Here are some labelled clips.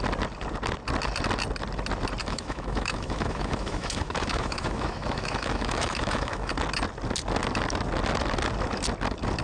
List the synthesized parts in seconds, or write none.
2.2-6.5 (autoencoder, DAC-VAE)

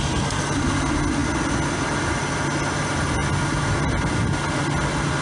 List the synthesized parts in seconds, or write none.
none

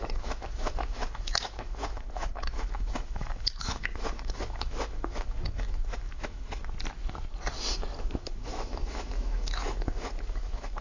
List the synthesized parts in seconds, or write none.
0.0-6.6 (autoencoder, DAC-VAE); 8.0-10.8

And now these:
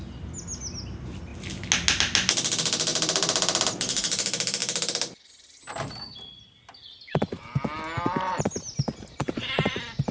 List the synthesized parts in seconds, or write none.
none